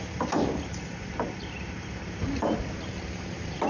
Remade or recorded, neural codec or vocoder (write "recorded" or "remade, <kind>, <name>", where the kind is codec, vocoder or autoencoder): remade, vocoder, BigVGAN v2